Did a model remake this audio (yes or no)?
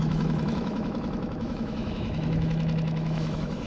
yes